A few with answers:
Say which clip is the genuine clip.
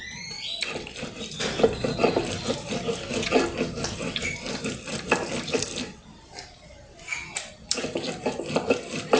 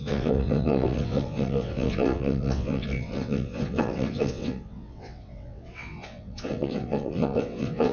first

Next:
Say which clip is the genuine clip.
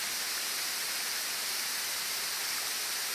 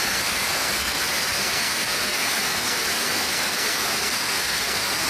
first